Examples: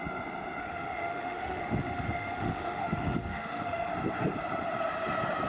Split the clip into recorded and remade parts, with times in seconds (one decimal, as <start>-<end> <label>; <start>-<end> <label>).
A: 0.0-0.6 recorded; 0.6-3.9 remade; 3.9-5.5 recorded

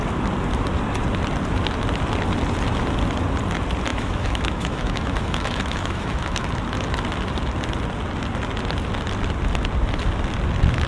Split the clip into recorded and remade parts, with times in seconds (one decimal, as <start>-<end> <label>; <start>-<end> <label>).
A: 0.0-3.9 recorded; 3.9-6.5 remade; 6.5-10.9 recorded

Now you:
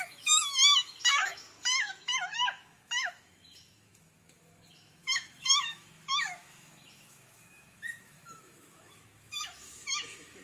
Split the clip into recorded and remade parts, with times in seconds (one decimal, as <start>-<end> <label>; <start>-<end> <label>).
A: 0.0-10.4 remade

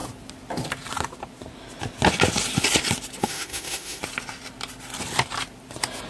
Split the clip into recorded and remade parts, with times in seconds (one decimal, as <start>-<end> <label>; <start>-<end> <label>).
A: 0.0-3.2 recorded; 3.2-4.0 remade; 4.0-6.1 recorded

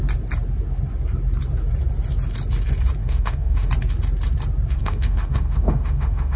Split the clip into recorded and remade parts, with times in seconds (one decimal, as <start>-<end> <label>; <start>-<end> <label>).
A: 0.0-3.0 recorded; 3.0-3.7 remade; 3.7-4.8 recorded; 4.8-6.4 remade

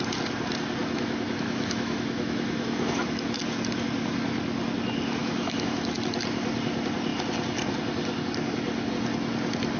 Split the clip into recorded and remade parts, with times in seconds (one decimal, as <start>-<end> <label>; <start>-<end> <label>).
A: 0.0-0.8 recorded; 0.8-3.4 remade; 3.4-5.2 recorded; 5.2-6.0 remade; 6.0-9.8 recorded

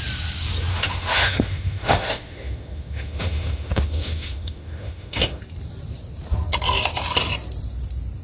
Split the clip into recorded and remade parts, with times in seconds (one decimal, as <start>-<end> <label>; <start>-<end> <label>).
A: 0.0-0.7 recorded; 0.7-5.4 remade; 5.4-8.2 recorded